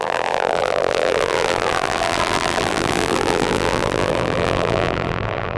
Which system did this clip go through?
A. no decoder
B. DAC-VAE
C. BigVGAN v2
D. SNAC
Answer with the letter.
C